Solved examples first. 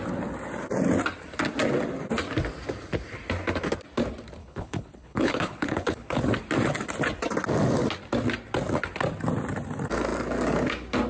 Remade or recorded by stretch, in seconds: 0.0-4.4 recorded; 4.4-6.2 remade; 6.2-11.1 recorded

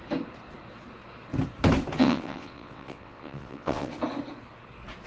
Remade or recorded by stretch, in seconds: 0.0-2.0 recorded; 2.0-3.9 remade; 3.9-5.1 recorded

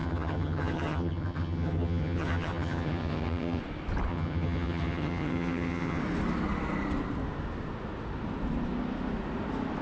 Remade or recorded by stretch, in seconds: 0.0-3.6 remade; 3.6-4.1 recorded; 4.1-6.0 remade; 6.0-9.8 recorded